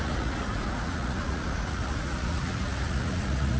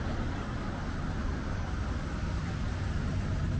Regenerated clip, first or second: first